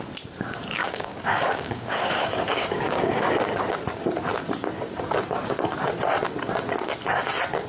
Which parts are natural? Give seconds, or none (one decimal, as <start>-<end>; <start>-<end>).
0.0-0.8; 3.3-7.7